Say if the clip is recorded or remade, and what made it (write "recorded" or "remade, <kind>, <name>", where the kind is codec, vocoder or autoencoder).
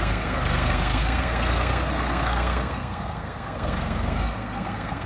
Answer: remade, codec, SNAC